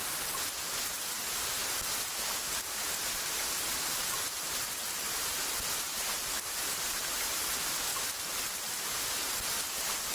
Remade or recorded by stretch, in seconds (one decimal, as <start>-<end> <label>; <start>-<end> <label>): 0.0-4.0 recorded; 4.0-7.5 remade; 7.5-7.9 recorded; 7.9-8.8 remade; 8.8-10.1 recorded